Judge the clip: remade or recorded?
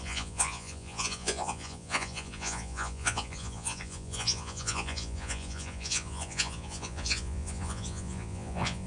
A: remade